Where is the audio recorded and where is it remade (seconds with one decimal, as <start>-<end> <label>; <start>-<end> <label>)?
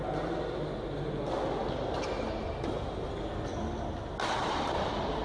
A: 0.0-5.2 recorded